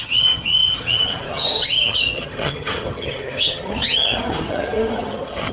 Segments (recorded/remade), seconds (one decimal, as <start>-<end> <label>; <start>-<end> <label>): 0.0-5.5 remade